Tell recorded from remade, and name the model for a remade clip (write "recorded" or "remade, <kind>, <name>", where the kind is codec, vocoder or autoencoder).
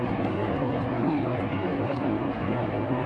remade, codec, SNAC